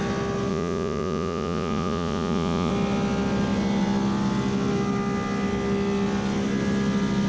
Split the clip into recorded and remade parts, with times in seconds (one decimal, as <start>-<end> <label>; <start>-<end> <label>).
0.0-0.5 recorded; 0.5-2.7 remade; 2.7-7.3 recorded